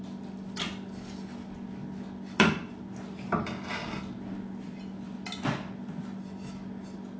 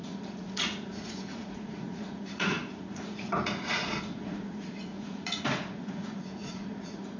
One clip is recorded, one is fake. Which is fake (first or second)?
second